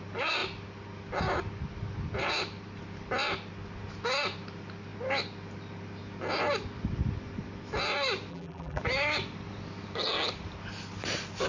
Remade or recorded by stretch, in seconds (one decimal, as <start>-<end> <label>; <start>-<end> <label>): 0.0-8.3 recorded; 8.3-8.8 remade; 8.8-11.5 recorded